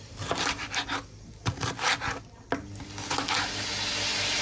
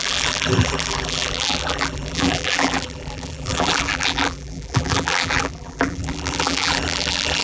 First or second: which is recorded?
first